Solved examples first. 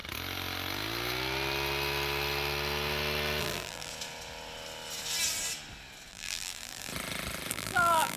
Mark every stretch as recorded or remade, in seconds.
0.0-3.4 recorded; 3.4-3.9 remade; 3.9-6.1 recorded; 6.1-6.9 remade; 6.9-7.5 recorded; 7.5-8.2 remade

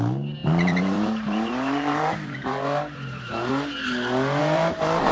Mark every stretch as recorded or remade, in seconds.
0.0-0.4 recorded; 0.4-3.5 remade; 3.5-4.4 recorded; 4.4-5.1 remade

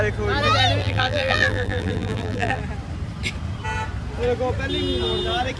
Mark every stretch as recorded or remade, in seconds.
0.0-0.8 recorded; 0.8-2.6 remade; 2.6-5.6 recorded

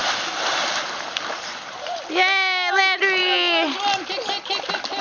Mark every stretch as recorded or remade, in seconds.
0.0-2.0 remade; 2.0-5.0 recorded

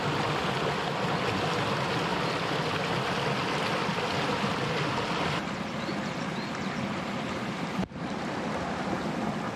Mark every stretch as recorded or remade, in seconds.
0.0-9.6 recorded

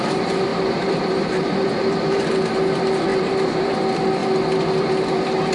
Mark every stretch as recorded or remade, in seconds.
0.0-0.5 recorded; 0.5-2.3 remade; 2.3-3.1 recorded; 3.1-3.8 remade; 3.8-5.5 recorded